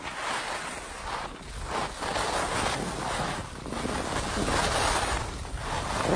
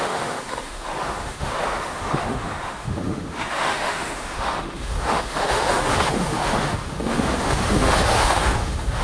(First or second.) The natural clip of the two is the first